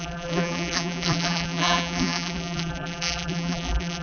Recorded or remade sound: remade